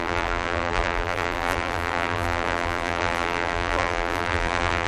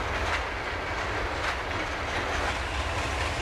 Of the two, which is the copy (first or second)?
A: first